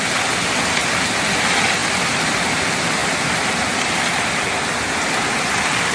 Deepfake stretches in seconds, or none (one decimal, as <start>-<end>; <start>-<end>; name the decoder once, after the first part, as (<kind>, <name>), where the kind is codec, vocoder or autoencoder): none